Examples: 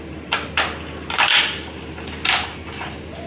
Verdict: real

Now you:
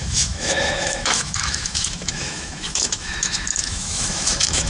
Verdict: fake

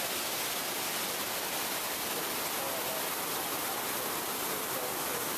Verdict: real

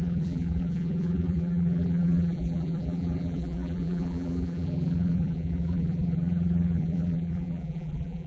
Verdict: fake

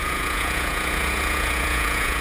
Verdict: fake